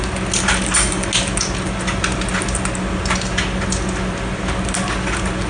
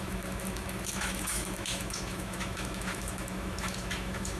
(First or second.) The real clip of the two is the first